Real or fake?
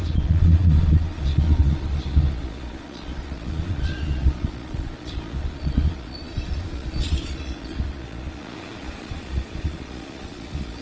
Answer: fake